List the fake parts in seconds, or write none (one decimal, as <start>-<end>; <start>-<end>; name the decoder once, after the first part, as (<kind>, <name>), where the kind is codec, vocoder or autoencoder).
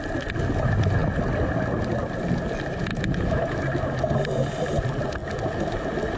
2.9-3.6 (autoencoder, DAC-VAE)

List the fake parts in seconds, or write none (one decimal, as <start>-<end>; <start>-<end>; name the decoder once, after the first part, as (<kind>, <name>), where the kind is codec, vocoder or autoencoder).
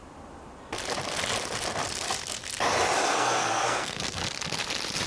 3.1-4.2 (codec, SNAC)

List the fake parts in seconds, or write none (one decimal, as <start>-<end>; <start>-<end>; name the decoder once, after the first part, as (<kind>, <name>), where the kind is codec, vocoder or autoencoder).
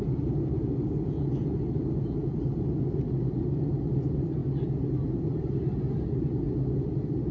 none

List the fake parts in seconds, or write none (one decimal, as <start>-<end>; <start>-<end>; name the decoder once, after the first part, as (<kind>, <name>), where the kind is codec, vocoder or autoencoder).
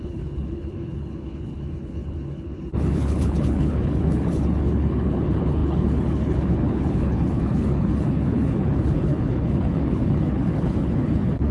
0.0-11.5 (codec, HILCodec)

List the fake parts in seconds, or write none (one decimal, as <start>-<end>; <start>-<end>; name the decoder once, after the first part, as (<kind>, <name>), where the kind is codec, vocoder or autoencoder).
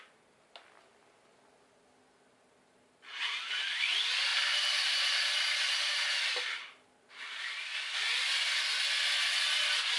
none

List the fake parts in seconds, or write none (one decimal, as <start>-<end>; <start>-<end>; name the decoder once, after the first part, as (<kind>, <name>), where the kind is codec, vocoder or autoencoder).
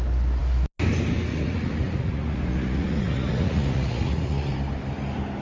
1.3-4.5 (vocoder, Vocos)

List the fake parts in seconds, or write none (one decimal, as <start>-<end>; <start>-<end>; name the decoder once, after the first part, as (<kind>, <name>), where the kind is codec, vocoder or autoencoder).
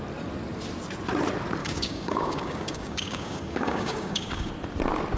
1.6-4.5 (codec, DAC)